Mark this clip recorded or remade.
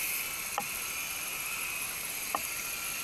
recorded